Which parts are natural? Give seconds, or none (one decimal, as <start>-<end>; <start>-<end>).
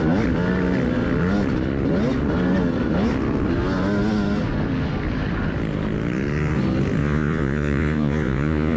0.0-7.0